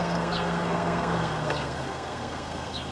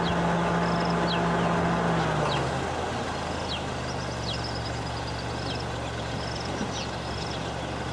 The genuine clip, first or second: second